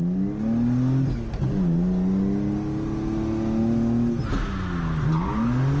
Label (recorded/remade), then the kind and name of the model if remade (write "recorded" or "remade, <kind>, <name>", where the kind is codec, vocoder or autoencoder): recorded